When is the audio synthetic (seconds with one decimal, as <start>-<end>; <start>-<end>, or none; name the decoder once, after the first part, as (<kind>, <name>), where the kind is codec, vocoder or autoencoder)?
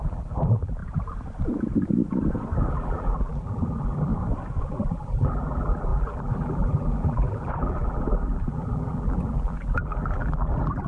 0.0-0.8 (vocoder, BigVGAN v2); 2.7-4.1; 4.7-10.9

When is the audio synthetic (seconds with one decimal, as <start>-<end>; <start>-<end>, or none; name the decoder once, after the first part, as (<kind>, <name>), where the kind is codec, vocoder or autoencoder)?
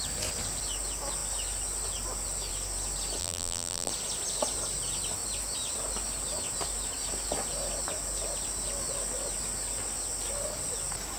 3.2-3.9 (vocoder, BigVGAN v2)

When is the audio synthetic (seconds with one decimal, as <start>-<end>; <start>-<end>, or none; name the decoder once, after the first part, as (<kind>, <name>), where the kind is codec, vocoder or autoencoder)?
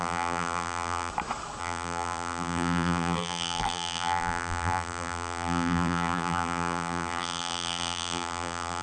0.0-1.1 (vocoder, BigVGAN v2); 1.6-8.8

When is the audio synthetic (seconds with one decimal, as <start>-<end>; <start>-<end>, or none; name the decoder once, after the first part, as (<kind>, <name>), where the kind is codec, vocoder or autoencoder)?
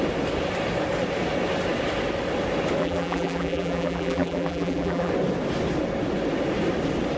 2.8-5.1 (vocoder, BigVGAN v2)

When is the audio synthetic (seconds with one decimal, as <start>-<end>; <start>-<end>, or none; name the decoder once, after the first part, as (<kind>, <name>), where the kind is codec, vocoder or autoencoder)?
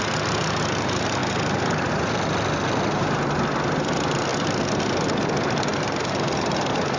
1.2-1.9 (vocoder, BigVGAN v2); 5.7-7.0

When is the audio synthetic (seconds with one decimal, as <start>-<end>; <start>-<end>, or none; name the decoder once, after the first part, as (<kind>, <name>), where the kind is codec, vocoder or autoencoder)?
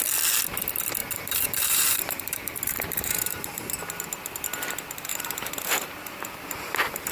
1.0-3.8 (vocoder, BigVGAN v2); 5.1-7.1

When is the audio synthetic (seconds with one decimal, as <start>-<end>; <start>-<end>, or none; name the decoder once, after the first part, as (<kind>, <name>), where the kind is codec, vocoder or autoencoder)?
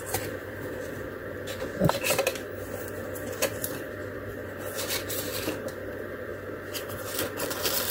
0.0-1.2 (vocoder, BigVGAN v2); 1.8-2.3; 2.8-6.3; 7.4-7.9